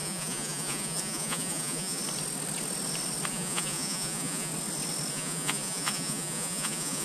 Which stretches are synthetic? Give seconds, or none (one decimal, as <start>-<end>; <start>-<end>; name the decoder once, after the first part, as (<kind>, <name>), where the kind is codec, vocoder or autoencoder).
0.0-2.0 (vocoder, Vocos); 3.3-4.5; 5.1-7.0